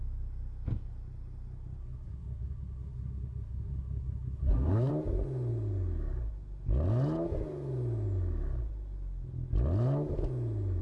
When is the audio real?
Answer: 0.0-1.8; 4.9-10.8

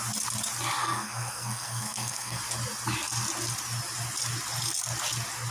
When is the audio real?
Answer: 0.0-0.8; 2.4-5.5

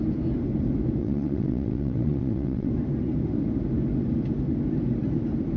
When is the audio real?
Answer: 0.0-1.0; 2.7-5.6

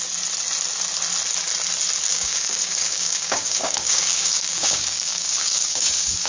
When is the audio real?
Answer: 0.0-2.1

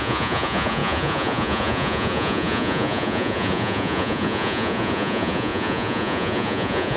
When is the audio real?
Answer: none

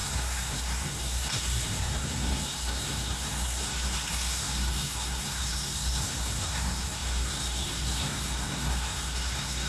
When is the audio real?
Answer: none

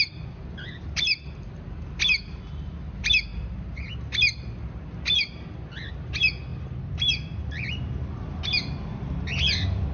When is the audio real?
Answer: 0.0-9.9

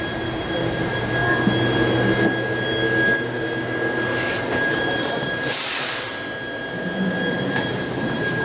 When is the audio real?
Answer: 1.2-4.3; 6.1-7.3